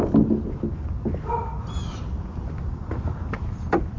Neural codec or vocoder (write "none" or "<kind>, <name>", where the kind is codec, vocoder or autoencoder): none